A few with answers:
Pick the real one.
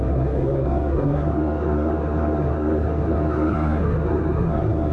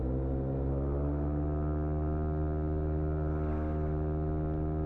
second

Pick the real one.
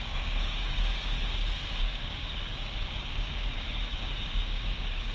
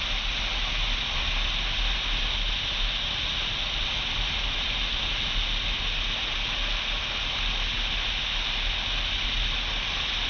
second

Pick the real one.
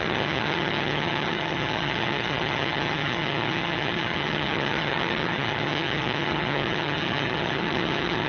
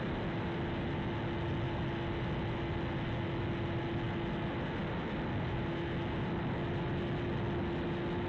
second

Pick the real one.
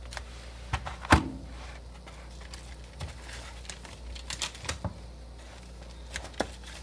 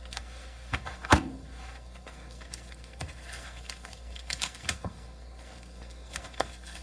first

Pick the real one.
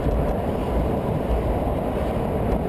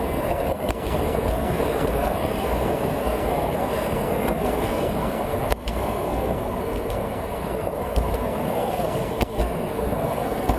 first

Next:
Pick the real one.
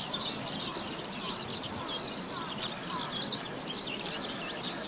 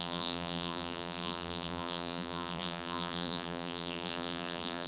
first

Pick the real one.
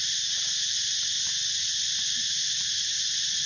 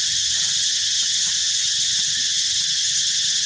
first